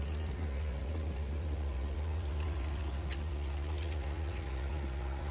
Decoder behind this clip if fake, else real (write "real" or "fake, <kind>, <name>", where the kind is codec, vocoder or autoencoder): fake, vocoder, Vocos